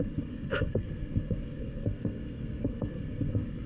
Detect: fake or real fake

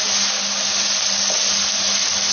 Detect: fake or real real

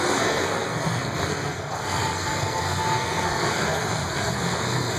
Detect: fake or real fake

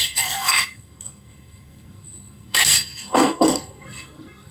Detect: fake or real fake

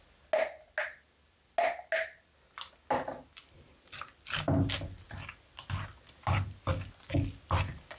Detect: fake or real real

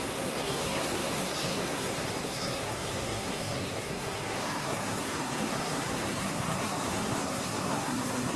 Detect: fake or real fake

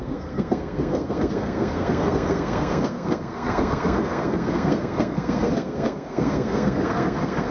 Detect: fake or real fake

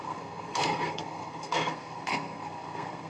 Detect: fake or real fake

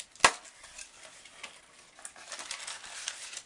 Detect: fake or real real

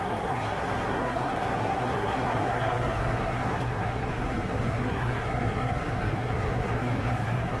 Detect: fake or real fake